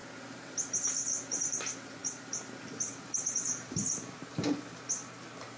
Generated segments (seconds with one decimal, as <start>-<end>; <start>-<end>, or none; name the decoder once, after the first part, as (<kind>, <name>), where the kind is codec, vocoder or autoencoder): 0.0-5.6 (vocoder, BigVGAN v2)